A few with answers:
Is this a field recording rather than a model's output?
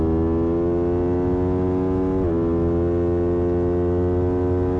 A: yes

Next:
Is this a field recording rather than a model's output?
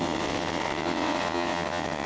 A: no